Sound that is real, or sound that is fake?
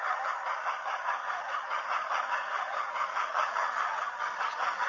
fake